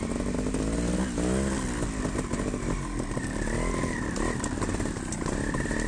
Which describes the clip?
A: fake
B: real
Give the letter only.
B